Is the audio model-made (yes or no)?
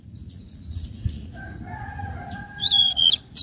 yes